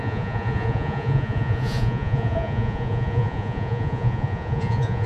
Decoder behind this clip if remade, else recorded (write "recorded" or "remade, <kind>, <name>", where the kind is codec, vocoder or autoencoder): remade, vocoder, Vocos